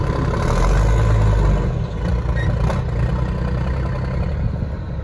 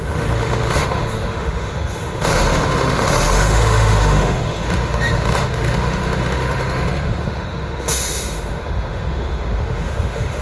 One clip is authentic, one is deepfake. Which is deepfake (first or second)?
second